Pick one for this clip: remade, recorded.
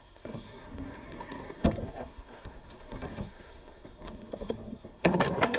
remade